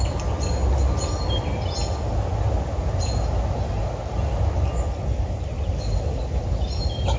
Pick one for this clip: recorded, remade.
recorded